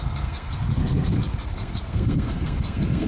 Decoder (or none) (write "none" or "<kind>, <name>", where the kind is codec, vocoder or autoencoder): codec, SNAC